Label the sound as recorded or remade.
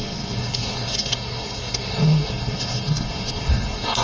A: remade